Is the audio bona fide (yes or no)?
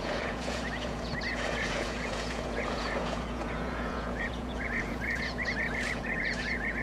no